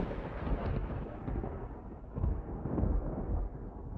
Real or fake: fake